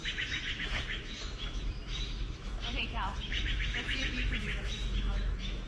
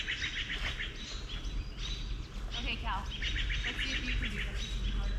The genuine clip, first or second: second